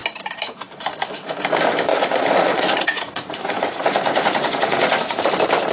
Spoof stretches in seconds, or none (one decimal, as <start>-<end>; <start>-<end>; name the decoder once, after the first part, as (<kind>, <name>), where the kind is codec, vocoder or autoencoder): 1.9-5.3 (vocoder, Vocos)